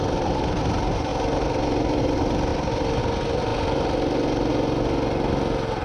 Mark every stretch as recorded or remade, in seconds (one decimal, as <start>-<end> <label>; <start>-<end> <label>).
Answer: 0.0-5.8 recorded